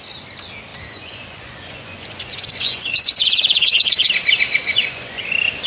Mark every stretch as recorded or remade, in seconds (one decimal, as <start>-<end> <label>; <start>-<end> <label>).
0.0-0.7 recorded; 0.7-4.1 remade; 4.1-4.6 recorded; 4.6-5.2 remade; 5.2-5.7 recorded